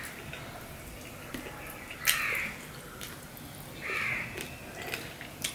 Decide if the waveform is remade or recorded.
recorded